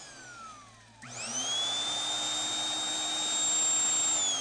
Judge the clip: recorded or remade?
recorded